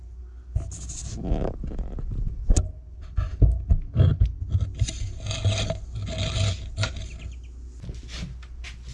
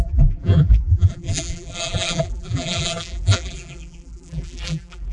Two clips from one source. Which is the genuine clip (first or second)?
first